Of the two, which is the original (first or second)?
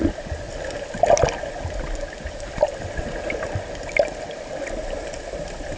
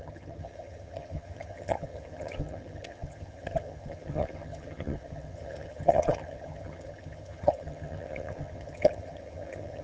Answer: first